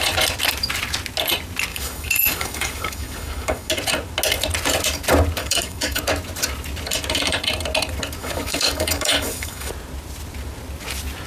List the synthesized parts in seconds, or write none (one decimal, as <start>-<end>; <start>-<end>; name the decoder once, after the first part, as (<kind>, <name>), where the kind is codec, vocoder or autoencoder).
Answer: 1.7-3.7 (codec, DAC); 5.4-6.0; 8.2-9.7